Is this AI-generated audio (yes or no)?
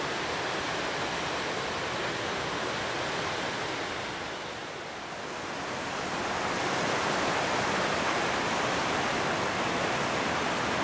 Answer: no